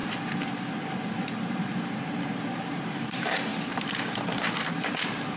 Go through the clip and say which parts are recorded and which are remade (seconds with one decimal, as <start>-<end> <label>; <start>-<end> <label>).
0.0-1.2 recorded; 1.2-3.5 remade; 3.5-5.4 recorded